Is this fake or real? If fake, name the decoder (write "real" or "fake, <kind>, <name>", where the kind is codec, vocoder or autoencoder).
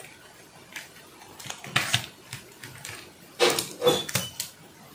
real